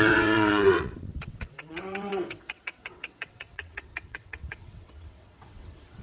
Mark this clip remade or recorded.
remade